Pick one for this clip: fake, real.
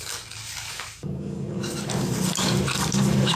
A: fake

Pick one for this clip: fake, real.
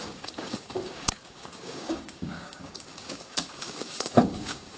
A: fake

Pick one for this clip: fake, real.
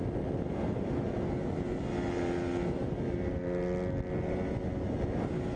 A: real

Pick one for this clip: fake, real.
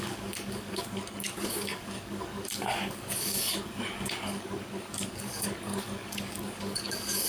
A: fake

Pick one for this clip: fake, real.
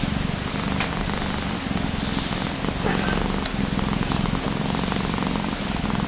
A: real